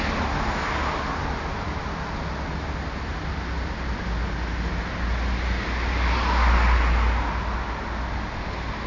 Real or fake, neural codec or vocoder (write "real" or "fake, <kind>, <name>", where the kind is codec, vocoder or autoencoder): real